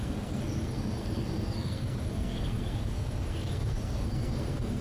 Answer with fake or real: fake